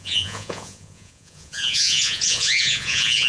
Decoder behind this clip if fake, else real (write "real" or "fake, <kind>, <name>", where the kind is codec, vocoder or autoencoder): fake, vocoder, Vocos